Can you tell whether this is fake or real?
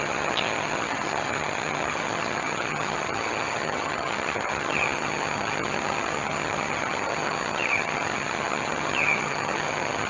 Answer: fake